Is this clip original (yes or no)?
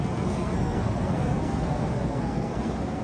no